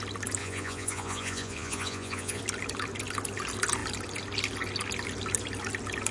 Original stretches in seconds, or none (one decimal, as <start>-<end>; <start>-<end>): 0.0-0.4; 2.4-6.1